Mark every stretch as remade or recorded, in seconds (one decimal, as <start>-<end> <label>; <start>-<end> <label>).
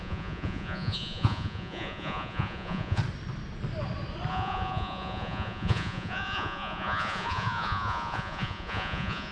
0.0-3.0 remade; 3.0-4.3 recorded; 4.3-9.3 remade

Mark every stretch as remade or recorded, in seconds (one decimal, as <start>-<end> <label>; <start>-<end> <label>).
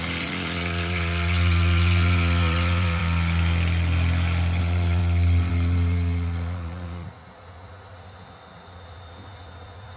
0.0-3.0 remade; 3.0-4.6 recorded; 4.6-5.0 remade; 5.0-5.5 recorded; 5.5-10.0 remade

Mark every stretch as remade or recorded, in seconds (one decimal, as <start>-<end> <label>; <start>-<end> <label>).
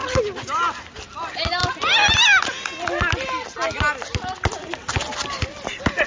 0.0-6.1 recorded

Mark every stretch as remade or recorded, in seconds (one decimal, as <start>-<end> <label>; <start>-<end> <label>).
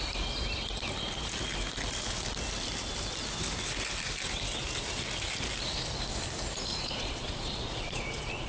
0.0-6.7 recorded; 6.7-8.5 remade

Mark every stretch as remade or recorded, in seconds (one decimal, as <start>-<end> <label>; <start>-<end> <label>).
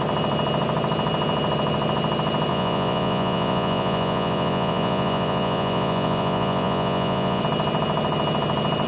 0.0-2.5 recorded; 2.5-7.4 remade; 7.4-8.9 recorded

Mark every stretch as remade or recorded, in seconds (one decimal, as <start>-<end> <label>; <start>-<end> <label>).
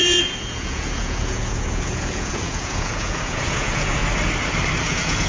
0.0-4.0 remade; 4.0-4.8 recorded; 4.8-5.3 remade